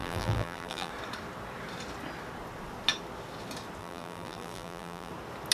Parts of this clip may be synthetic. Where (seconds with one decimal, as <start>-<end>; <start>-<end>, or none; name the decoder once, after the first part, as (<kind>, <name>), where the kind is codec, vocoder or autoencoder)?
0.0-0.9 (vocoder, BigVGAN v2); 3.8-5.1